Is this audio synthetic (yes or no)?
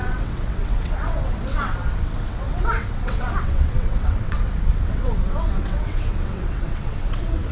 yes